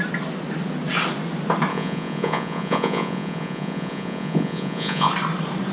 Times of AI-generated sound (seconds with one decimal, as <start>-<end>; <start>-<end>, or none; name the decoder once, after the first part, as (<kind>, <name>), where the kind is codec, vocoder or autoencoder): 1.7-5.1 (vocoder, Vocos)